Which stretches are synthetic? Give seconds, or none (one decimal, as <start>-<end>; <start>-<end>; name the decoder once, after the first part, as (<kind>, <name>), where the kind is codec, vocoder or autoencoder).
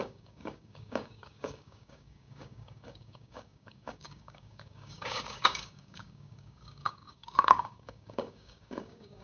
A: 0.0-9.2 (codec, DAC)